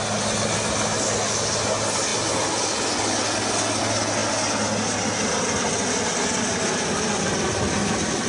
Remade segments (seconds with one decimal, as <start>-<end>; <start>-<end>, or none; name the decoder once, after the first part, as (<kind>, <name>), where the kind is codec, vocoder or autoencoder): none